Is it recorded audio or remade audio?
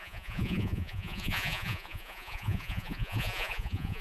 remade